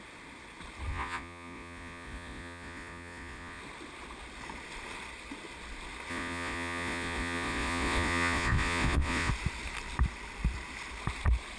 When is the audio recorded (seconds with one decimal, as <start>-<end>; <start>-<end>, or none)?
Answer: 0.0-0.9; 3.6-6.1; 9.3-11.6